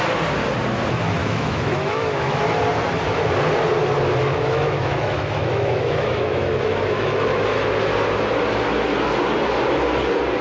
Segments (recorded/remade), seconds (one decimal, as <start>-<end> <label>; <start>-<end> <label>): 0.0-1.2 recorded; 1.2-2.4 remade; 2.4-4.3 recorded; 4.3-7.4 remade; 7.4-10.4 recorded